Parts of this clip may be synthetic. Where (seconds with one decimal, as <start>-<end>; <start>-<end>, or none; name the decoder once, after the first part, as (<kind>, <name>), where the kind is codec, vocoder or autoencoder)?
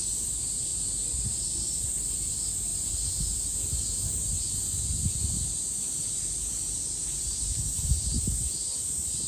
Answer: 0.0-0.7 (vocoder, BigVGAN v2); 1.4-2.7; 6.4-9.3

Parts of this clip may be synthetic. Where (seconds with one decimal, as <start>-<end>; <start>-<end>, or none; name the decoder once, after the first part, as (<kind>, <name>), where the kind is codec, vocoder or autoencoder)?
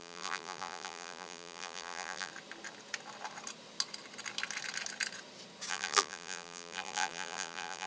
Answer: 0.0-2.3 (vocoder, BigVGAN v2); 5.7-7.9